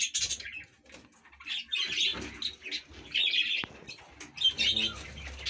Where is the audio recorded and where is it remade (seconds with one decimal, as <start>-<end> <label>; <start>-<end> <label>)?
0.0-5.5 recorded